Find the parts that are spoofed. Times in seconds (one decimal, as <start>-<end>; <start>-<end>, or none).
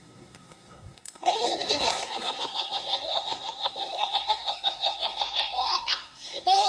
0.0-6.7